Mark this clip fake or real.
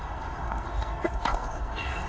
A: fake